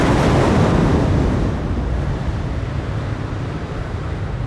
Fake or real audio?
real